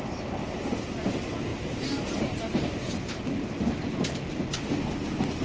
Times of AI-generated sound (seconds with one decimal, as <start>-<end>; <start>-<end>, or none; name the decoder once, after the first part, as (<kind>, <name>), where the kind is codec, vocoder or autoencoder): 1.5-4.7 (vocoder, BigVGAN v2)